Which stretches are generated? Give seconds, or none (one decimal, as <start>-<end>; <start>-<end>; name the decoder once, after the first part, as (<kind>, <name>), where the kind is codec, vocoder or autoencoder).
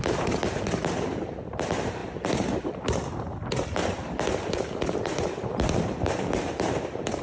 0.0-3.8 (vocoder, BigVGAN v2); 5.0-7.2